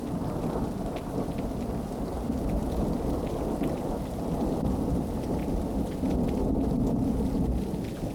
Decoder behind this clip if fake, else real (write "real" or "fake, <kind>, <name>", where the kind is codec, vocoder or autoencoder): real